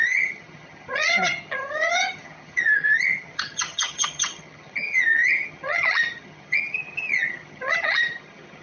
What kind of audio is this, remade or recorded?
remade